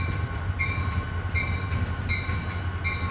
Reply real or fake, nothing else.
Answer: real